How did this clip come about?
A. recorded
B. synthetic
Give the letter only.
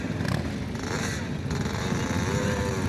A